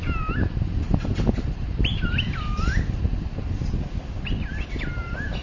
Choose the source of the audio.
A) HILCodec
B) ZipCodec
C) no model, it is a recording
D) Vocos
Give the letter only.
C